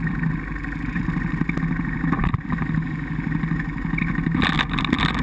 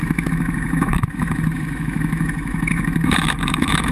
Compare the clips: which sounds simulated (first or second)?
second